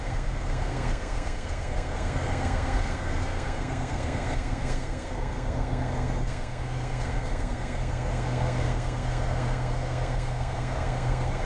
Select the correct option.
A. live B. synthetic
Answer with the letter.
B